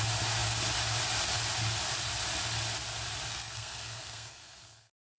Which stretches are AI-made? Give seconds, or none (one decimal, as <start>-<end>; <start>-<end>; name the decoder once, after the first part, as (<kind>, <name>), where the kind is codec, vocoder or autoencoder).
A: 3.3-5.2 (codec, SNAC)